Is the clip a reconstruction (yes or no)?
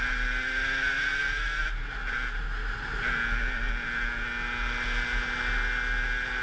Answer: no